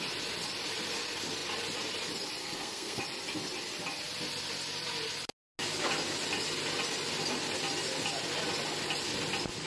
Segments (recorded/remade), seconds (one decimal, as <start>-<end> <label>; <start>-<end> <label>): 0.0-2.4 recorded; 2.4-3.0 remade; 3.0-9.7 recorded